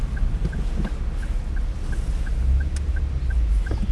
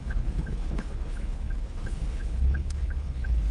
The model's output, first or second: second